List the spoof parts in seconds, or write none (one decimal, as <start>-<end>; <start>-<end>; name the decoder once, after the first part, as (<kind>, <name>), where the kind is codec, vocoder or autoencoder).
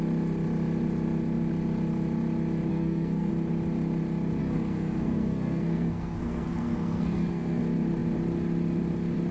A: 2.7-3.3 (codec, SNAC); 4.4-7.6